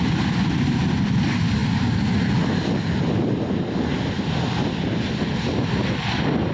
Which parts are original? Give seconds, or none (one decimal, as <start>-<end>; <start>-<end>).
0.0-6.5